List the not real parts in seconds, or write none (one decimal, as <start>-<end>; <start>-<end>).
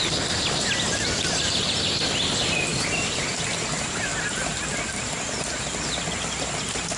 2.7-3.5